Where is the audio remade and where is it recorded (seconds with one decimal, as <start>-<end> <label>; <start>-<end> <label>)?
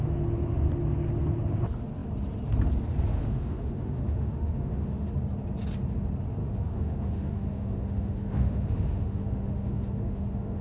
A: 0.0-3.1 recorded; 3.1-5.1 remade; 5.1-6.4 recorded; 6.4-10.6 remade